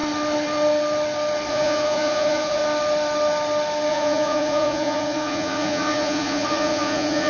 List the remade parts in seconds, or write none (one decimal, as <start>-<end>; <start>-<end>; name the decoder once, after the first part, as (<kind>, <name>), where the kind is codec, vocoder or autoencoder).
1.5-2.6 (vocoder, Vocos); 3.9-7.3